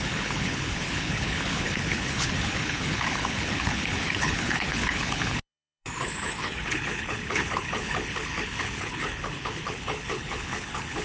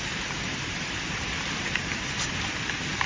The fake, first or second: first